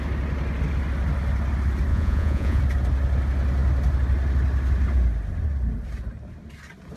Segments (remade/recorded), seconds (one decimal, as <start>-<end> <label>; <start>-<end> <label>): 0.0-1.9 recorded; 1.9-2.6 remade; 2.6-7.0 recorded